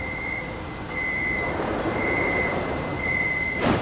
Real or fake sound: fake